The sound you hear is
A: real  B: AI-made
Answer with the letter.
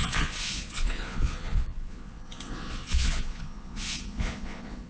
B